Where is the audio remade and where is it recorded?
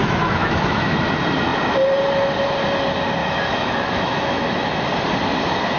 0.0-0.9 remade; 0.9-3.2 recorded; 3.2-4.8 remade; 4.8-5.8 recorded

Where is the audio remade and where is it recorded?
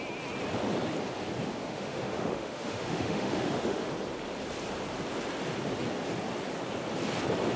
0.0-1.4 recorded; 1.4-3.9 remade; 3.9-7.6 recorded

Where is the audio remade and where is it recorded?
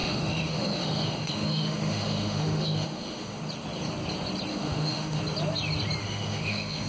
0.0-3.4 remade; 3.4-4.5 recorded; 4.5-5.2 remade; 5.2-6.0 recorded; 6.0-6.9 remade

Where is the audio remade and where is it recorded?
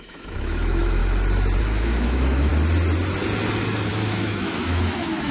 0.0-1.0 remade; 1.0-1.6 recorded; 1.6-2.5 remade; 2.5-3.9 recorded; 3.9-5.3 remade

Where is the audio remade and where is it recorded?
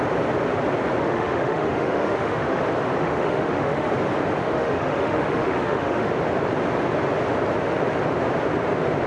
0.0-1.0 recorded; 1.0-2.6 remade; 2.6-3.0 recorded; 3.0-3.9 remade; 3.9-4.4 recorded; 4.4-6.1 remade; 6.1-9.1 recorded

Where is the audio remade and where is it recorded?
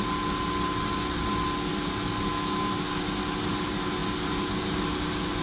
0.0-2.3 recorded; 2.3-2.8 remade; 2.8-5.4 recorded